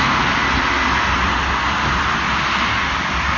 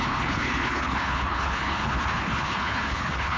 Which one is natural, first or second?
first